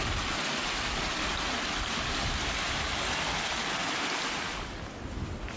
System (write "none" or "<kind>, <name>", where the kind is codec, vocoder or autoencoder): none